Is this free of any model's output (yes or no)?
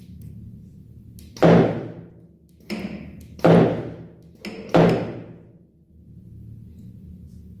yes